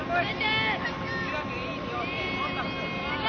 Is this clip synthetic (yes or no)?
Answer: no